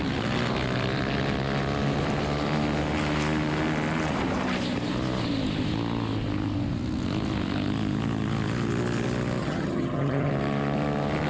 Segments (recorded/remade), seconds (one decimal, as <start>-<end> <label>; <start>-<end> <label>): 0.0-9.4 recorded; 9.4-10.3 remade; 10.3-11.3 recorded